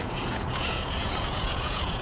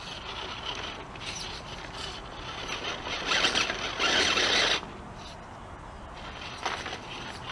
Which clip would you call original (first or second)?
second